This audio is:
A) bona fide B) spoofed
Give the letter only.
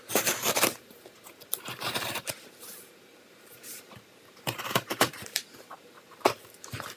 B